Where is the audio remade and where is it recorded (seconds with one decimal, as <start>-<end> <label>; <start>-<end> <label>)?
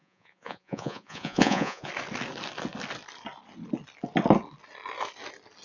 0.0-1.9 remade; 1.9-5.6 recorded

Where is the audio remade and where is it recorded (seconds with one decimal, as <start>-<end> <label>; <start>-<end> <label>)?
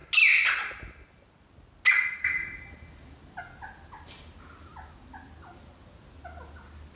0.0-7.0 recorded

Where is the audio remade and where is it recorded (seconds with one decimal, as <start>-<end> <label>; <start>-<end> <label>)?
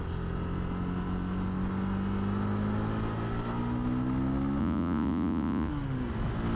0.0-4.6 recorded; 4.6-5.7 remade; 5.7-6.6 recorded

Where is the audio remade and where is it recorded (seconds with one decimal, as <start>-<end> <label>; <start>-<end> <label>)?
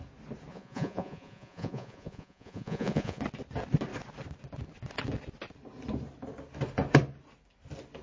0.0-0.5 recorded; 0.5-3.2 remade; 3.2-8.0 recorded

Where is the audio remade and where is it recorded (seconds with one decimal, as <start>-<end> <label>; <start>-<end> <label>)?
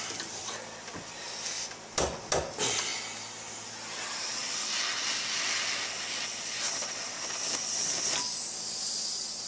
0.0-9.5 recorded